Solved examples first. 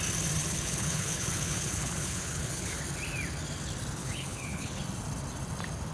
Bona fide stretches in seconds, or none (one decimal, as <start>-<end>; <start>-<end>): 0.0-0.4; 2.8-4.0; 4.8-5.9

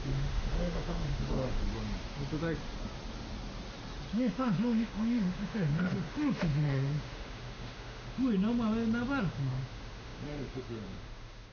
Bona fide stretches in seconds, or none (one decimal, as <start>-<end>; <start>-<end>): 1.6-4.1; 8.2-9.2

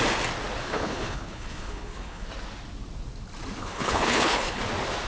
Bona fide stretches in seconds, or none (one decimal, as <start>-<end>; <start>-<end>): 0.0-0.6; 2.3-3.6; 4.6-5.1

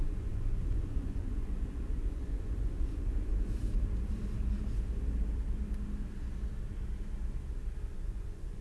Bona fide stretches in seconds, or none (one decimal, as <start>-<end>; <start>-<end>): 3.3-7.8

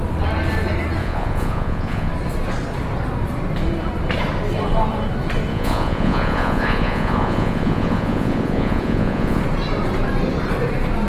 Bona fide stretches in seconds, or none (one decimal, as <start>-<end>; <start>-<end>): 0.0-1.0; 2.1-5.5; 9.4-11.1

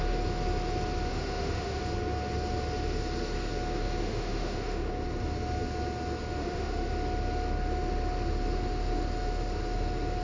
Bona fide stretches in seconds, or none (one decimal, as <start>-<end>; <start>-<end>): 0.0-1.1; 1.8-4.0; 4.9-6.4; 6.9-10.2

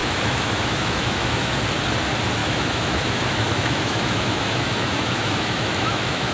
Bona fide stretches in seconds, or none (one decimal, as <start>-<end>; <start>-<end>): 1.6-2.4

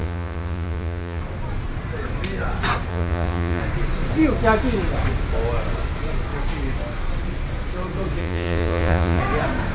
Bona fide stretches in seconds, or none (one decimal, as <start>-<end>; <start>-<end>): 1.2-2.9; 3.6-8.2; 9.2-9.7